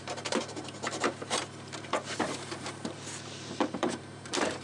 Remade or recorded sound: remade